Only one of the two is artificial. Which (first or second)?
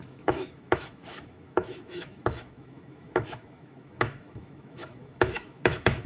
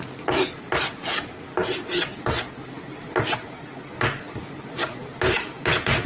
first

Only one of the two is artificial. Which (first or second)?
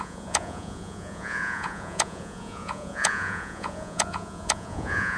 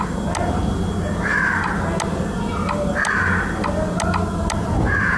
first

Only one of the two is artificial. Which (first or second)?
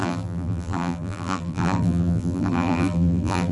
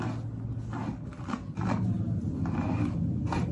first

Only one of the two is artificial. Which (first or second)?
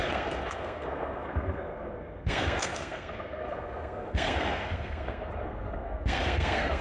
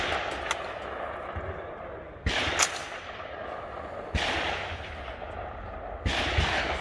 first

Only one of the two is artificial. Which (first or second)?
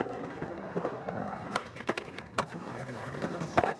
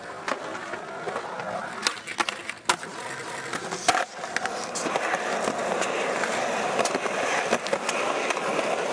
first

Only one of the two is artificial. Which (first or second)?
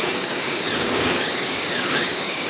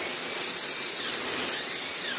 first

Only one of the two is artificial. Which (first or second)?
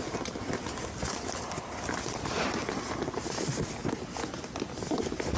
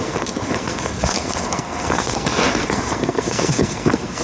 second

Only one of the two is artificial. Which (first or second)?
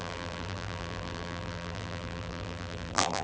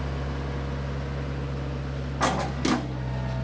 first